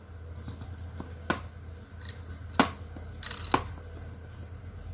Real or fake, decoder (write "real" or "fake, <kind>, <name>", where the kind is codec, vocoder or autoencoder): real